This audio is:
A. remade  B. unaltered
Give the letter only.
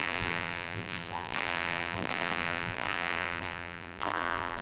A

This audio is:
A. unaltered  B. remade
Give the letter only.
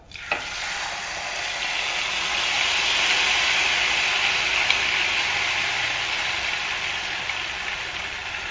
A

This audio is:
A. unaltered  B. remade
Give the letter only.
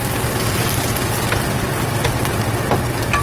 A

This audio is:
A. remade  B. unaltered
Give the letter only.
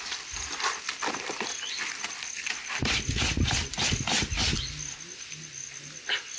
B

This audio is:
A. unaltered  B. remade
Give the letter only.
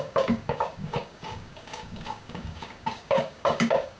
B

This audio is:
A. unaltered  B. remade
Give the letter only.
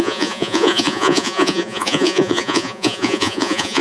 B